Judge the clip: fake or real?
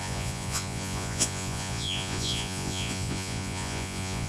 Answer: fake